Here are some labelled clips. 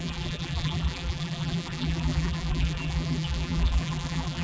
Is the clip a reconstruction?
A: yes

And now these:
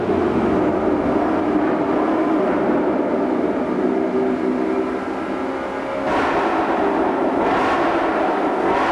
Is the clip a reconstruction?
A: no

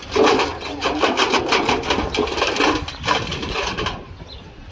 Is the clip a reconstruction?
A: no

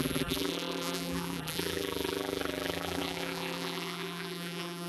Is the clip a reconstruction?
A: yes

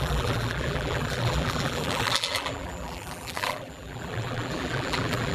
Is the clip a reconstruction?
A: yes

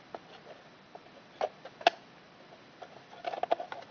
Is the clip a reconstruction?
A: no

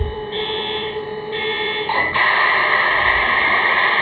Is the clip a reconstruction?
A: yes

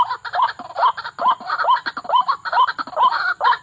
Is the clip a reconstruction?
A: yes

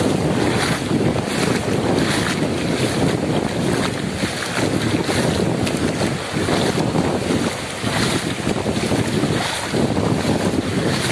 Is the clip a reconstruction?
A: no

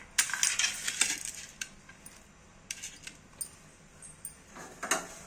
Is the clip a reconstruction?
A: no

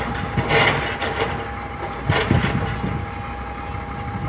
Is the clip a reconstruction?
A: no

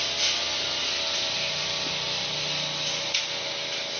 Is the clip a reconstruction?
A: no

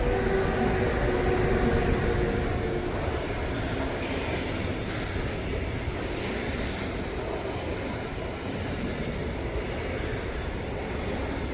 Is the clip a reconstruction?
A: no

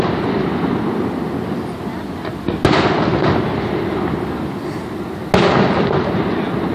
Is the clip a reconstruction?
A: no